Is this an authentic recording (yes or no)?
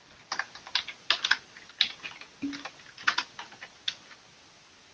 yes